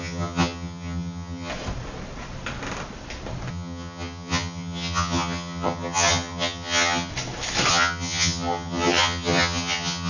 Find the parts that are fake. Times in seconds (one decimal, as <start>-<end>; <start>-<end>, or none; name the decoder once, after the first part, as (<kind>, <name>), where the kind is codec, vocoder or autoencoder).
0.0-1.5 (vocoder, HiFi-GAN); 3.5-7.1; 7.7-10.1